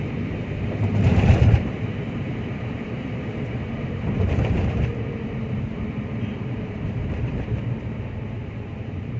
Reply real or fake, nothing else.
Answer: fake